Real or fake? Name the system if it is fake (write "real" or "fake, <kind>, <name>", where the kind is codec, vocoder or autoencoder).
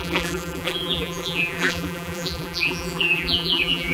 fake, vocoder, BigVGAN v2